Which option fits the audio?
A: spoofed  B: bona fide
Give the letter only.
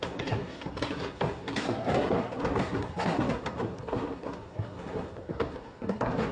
A